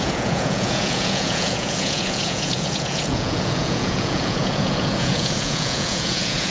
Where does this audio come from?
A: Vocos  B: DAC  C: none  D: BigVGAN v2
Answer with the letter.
A